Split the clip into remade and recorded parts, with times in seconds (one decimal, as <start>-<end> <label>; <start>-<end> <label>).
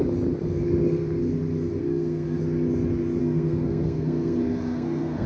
0.0-1.8 recorded; 1.8-2.4 remade; 2.4-3.2 recorded; 3.2-5.3 remade